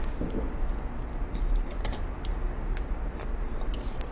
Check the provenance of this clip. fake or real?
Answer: real